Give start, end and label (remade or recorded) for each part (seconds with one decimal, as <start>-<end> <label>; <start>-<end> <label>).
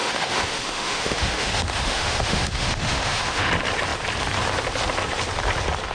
0.0-3.5 remade; 3.5-5.9 recorded